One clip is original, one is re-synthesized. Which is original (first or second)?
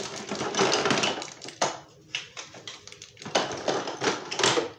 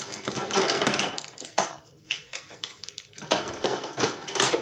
first